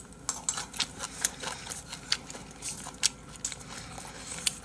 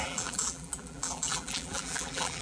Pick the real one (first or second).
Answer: first